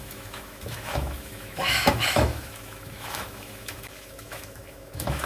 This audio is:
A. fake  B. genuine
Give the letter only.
A